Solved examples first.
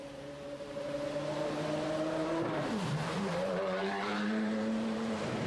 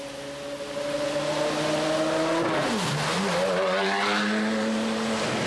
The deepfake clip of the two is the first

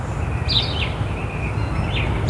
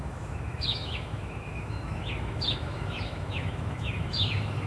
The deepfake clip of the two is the second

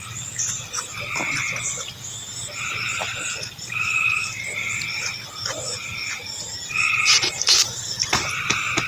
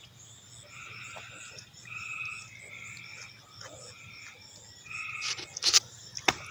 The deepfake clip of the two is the first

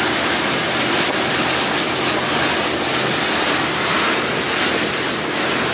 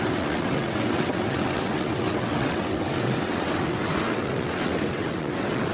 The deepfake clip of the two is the second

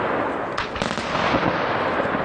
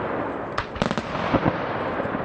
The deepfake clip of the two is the second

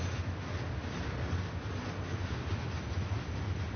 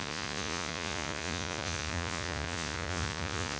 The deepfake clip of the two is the second